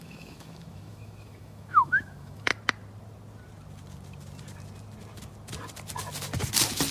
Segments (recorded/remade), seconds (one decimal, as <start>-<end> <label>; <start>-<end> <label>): 0.0-2.5 remade; 2.5-6.9 recorded